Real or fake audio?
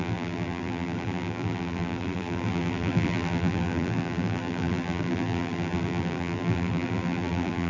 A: fake